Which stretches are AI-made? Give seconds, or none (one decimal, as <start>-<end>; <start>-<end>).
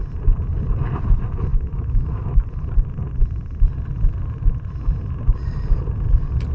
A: 1.5-2.4